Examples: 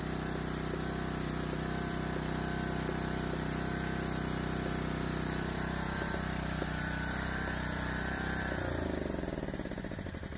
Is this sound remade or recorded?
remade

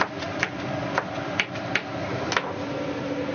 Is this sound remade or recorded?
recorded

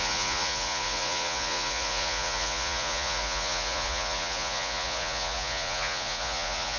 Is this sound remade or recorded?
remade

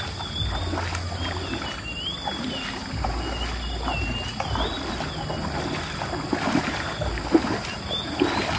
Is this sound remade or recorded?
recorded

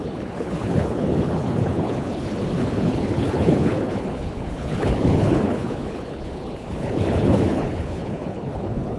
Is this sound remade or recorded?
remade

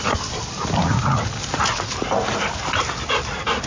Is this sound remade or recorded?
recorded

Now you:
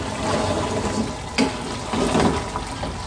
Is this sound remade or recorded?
recorded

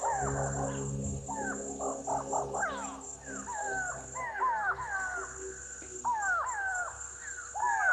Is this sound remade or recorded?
recorded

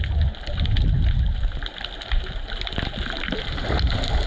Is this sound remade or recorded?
recorded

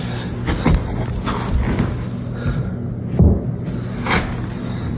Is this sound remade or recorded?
recorded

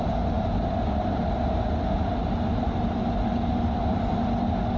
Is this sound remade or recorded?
recorded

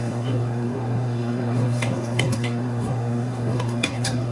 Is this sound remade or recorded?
remade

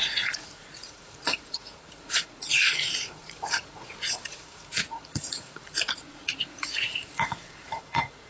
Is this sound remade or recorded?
remade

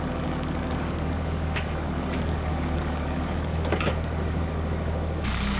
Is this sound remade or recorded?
remade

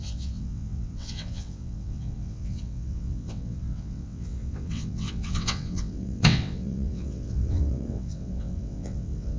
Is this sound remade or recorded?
remade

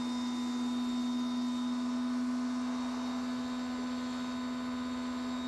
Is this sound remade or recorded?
recorded